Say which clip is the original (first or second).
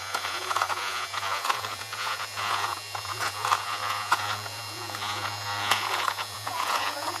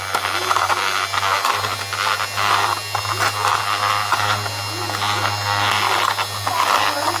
second